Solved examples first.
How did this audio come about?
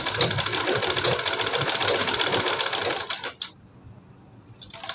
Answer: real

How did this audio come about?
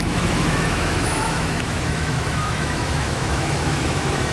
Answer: fake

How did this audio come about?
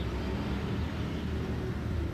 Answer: real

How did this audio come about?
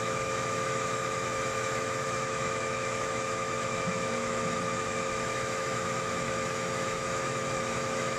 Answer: fake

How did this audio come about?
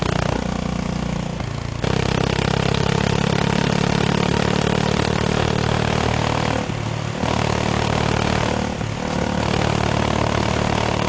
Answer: real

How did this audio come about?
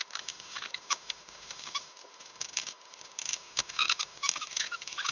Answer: fake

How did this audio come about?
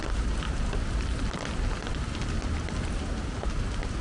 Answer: real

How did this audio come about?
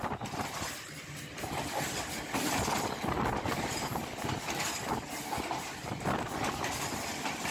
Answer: real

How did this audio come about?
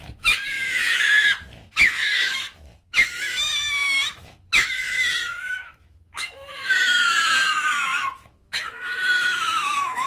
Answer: fake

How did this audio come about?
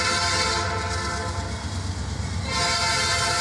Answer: real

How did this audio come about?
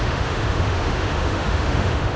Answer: fake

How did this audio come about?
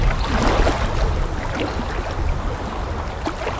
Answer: real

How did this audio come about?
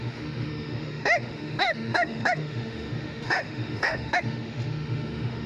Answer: fake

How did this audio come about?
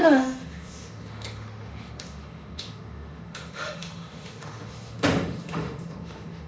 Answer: fake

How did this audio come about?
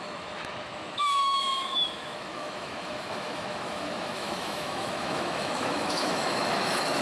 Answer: fake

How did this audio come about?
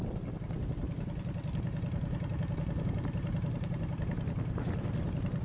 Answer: real